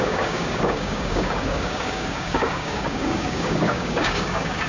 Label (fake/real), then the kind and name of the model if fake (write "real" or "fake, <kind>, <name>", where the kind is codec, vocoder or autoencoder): fake, codec, DAC